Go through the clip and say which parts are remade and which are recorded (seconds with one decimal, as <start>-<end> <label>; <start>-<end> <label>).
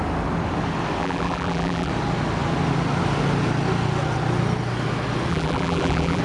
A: 0.0-1.0 recorded; 1.0-1.9 remade; 1.9-5.3 recorded; 5.3-6.2 remade